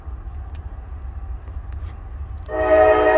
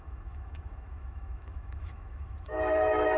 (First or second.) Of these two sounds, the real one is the first